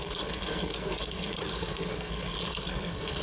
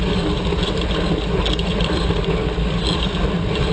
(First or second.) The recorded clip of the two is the second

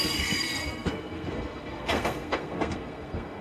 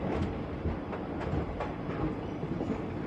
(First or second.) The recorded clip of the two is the second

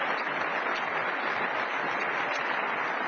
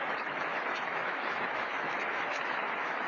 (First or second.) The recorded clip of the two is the first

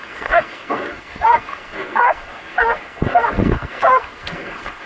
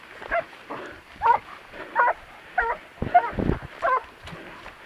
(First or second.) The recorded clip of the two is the second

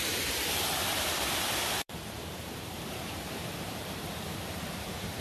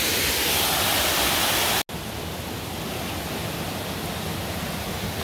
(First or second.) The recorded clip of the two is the second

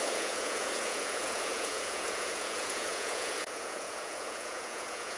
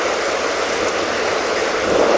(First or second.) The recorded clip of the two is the second